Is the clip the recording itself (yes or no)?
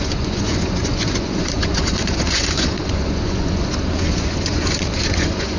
no